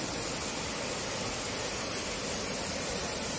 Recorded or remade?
recorded